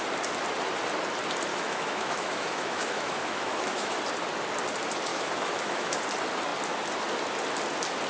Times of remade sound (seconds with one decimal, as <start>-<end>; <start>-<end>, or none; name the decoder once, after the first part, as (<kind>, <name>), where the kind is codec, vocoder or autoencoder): 1.5-4.0 (autoencoder, DAC-VAE); 5.1-6.0